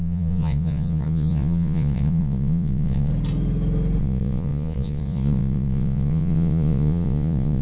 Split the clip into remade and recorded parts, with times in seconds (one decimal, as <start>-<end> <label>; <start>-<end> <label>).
0.0-3.1 remade; 3.1-4.0 recorded; 4.0-7.6 remade